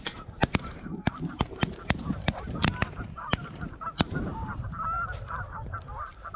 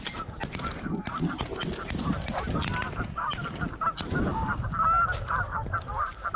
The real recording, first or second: second